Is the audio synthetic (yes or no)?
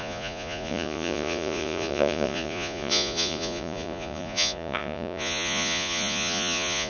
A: yes